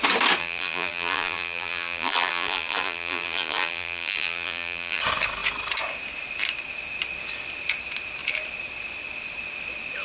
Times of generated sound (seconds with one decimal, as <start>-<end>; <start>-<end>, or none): 0.4-5.0